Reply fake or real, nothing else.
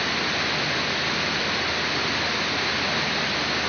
real